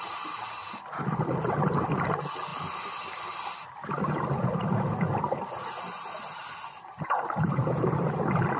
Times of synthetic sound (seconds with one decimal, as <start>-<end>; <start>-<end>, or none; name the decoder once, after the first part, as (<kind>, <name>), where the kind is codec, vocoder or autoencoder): none